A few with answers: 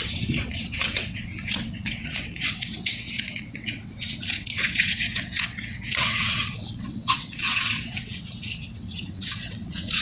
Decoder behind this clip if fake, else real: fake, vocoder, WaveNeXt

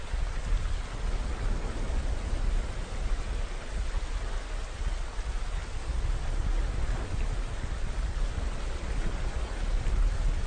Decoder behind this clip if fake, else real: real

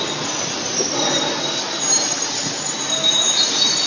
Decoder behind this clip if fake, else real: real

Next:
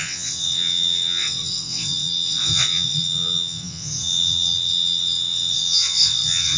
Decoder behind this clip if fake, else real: fake, vocoder, WaveNeXt